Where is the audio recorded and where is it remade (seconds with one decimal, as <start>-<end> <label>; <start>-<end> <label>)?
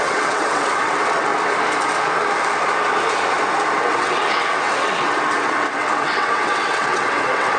0.0-1.3 remade; 1.3-3.8 recorded; 3.8-7.6 remade